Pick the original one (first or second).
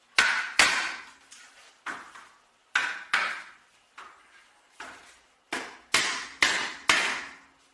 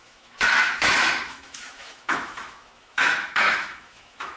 first